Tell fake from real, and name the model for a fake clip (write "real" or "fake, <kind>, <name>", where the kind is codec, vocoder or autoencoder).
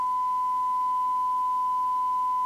real